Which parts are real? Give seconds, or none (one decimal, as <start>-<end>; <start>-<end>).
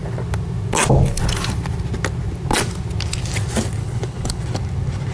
0.0-3.8; 4.4-5.1